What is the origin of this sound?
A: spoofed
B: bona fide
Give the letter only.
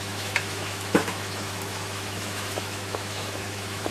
A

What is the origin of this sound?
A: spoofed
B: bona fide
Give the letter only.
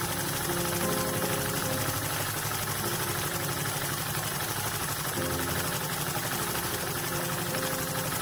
B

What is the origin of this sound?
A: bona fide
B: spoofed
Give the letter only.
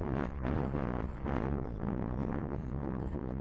B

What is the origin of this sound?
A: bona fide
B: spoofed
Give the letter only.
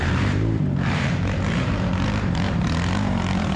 B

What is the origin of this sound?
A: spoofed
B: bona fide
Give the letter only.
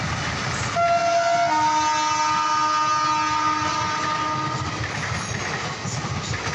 B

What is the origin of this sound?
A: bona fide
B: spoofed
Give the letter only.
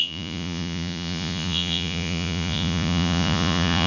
B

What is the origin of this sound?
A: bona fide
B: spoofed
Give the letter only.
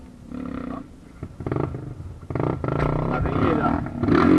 A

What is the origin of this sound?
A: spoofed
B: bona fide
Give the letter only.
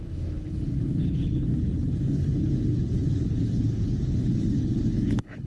A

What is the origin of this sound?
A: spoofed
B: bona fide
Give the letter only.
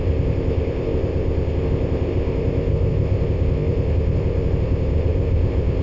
A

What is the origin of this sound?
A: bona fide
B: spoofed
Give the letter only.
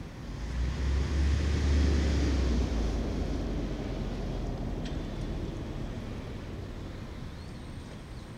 A